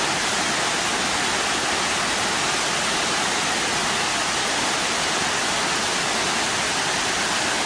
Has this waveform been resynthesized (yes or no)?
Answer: no